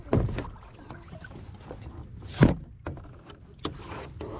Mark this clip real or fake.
real